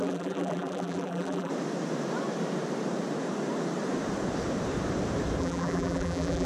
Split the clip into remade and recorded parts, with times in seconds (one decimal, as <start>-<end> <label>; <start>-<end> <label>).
0.0-1.5 remade; 1.5-5.4 recorded; 5.4-6.5 remade